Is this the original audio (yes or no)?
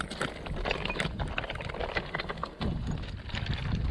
yes